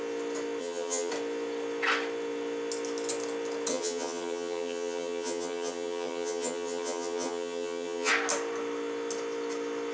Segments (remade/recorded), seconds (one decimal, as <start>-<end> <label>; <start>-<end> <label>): 0.0-0.6 recorded; 0.6-1.1 remade; 1.1-3.7 recorded; 3.7-8.1 remade; 8.1-9.9 recorded